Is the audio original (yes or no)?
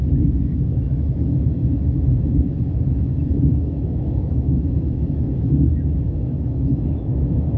no